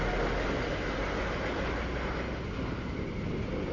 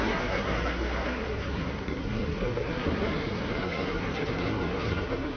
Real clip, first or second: first